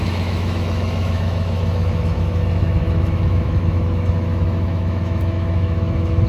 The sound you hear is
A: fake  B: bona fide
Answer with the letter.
A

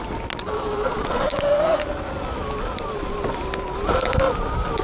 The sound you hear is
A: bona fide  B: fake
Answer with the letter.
A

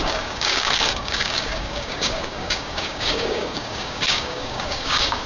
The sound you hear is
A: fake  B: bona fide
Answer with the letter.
A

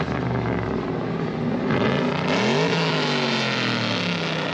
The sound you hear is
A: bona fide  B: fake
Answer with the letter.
A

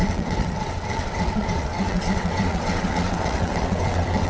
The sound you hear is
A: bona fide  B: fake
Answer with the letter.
B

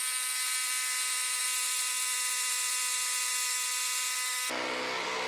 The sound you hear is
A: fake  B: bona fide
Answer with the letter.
B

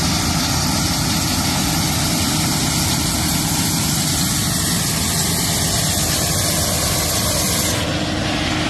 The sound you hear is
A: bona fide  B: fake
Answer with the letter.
A